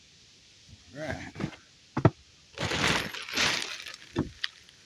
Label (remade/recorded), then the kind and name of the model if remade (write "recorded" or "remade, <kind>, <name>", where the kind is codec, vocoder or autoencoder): recorded